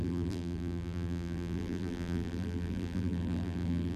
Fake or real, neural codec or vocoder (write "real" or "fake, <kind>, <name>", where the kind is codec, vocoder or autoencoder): fake, vocoder, BigVGAN v2